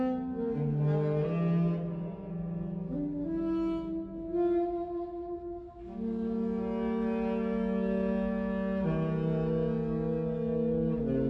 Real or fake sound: real